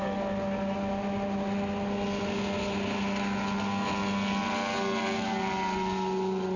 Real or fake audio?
real